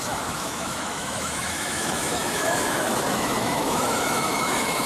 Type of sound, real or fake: fake